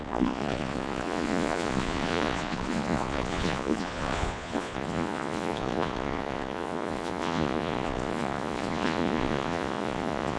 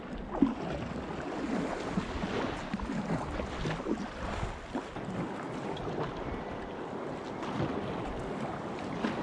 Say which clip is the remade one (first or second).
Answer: first